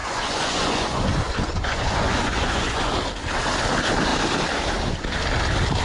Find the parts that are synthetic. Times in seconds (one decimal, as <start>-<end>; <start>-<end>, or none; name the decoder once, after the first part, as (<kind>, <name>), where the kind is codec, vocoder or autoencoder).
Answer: 0.0-2.9 (vocoder, Vocos)